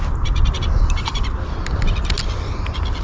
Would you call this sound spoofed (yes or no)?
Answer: no